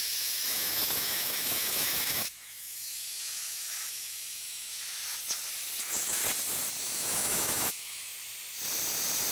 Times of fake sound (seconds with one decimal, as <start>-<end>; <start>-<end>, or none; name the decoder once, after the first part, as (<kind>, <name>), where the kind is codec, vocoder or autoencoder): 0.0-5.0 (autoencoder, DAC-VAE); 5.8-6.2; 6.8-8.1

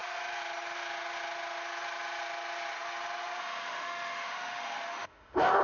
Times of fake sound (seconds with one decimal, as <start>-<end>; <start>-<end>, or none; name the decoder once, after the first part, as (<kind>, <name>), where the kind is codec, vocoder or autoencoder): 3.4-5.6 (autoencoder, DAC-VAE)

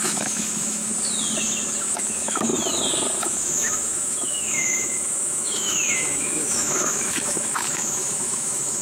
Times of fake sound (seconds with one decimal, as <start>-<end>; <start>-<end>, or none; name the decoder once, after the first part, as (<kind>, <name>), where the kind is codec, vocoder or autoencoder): 0.0-0.9 (autoencoder, DAC-VAE); 1.8-2.5; 3.2-8.8

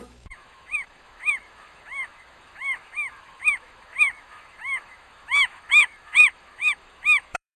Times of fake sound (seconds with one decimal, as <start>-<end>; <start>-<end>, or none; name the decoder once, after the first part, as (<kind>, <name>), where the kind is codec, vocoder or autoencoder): 0.0-7.6 (autoencoder, DAC-VAE)

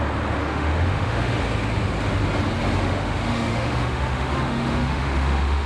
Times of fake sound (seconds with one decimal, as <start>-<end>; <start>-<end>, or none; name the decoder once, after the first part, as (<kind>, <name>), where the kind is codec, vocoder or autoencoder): 0.4-1.4 (autoencoder, DAC-VAE); 2.8-5.7

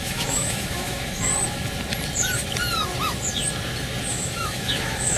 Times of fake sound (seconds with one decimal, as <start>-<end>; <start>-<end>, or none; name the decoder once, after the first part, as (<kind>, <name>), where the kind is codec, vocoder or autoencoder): 0.0-1.3 (autoencoder, DAC-VAE); 4.1-5.2